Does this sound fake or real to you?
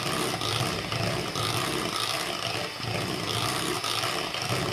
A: real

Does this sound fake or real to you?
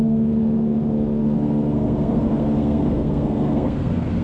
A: fake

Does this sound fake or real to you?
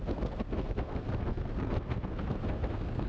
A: fake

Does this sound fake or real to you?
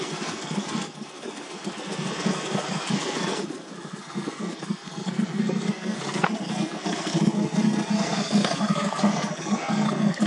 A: fake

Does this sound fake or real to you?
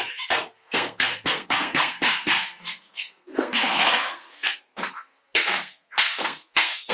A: fake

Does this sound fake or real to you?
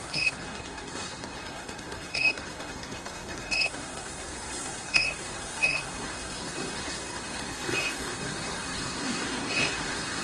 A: fake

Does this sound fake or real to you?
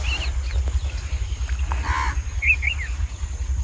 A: real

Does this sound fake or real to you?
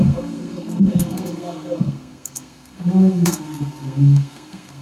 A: fake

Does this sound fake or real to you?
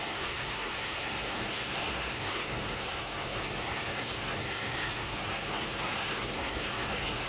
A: fake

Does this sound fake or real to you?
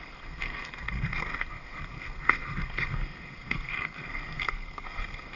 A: fake